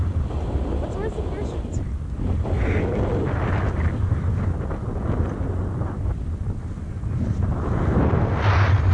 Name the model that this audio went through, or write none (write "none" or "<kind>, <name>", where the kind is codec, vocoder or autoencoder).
none